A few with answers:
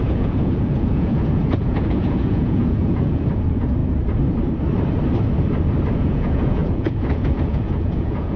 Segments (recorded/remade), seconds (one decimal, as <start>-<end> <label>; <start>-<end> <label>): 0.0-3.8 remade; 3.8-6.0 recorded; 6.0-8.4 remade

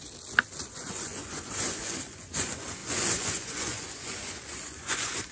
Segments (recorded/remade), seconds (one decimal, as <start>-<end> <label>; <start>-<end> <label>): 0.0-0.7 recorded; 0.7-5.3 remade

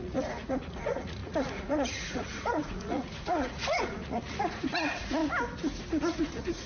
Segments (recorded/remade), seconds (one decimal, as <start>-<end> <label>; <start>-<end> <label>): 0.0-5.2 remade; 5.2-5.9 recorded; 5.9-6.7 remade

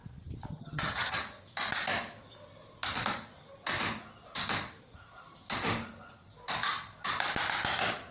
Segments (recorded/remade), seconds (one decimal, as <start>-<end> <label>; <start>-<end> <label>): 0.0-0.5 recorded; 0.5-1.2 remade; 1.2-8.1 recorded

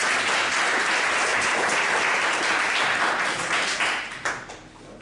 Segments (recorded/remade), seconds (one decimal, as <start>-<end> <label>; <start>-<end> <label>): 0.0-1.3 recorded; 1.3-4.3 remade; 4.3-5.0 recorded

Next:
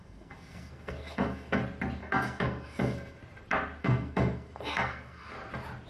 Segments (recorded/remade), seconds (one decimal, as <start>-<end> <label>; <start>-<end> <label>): 0.0-1.6 remade; 1.6-2.0 recorded; 2.0-3.2 remade; 3.2-3.8 recorded; 3.8-5.3 remade; 5.3-5.9 recorded

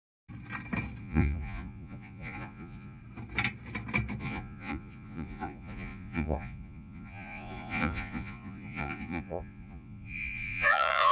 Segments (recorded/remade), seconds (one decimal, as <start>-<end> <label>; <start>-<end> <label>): 0.0-1.0 recorded; 1.0-3.0 remade; 3.0-4.2 recorded; 4.2-11.1 remade